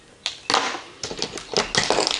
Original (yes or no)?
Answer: yes